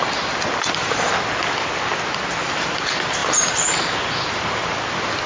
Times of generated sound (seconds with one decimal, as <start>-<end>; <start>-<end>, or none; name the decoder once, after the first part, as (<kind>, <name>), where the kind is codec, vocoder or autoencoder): none